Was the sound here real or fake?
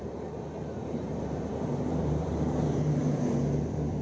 fake